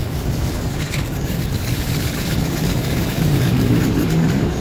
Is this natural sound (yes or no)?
no